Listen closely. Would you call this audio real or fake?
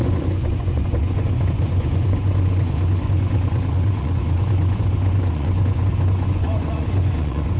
fake